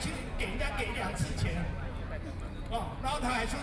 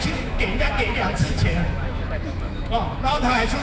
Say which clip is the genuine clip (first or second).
first